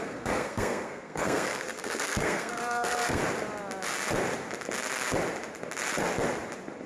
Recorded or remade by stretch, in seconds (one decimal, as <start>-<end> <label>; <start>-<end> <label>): 0.0-3.2 remade; 3.2-6.9 recorded